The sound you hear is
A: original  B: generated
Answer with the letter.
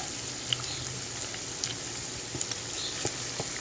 A